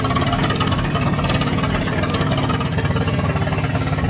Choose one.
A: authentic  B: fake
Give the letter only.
A